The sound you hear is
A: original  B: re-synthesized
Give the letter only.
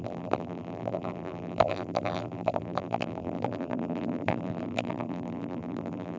B